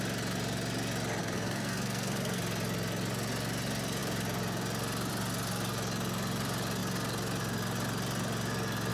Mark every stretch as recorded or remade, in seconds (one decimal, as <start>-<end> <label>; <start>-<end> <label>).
0.0-1.2 recorded; 1.2-2.4 remade; 2.4-8.9 recorded